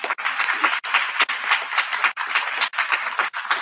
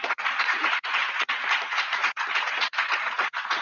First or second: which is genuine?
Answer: first